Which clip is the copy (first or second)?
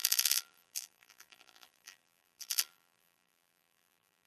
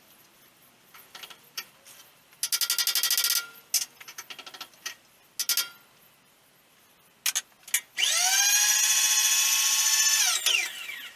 first